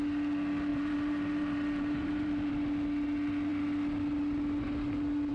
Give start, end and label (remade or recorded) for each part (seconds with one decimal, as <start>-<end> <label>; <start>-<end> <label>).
0.0-0.7 recorded; 0.7-2.5 remade; 2.5-5.3 recorded